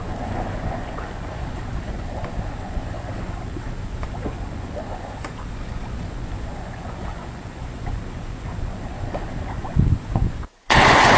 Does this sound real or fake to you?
fake